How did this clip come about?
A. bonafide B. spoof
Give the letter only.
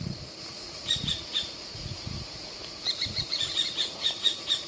B